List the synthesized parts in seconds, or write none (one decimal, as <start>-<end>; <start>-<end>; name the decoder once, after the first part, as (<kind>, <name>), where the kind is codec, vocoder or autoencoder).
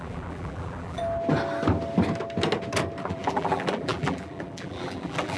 0.0-1.0 (vocoder, BigVGAN v2); 3.0-5.4